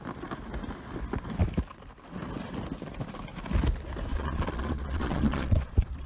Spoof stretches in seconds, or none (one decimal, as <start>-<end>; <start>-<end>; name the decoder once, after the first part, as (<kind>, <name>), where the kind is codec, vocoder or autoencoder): 4.1-6.1 (vocoder, Vocos)

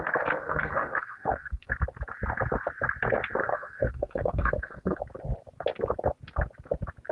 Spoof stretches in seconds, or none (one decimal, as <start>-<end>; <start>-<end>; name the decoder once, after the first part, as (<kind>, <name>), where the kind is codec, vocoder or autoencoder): 0.4-1.7 (codec, SNAC); 3.4-5.0